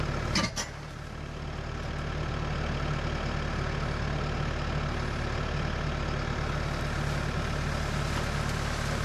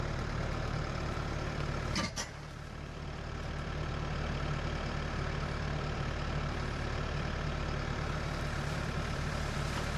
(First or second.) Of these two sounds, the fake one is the second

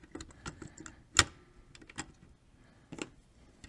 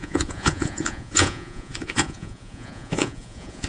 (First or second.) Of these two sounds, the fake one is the second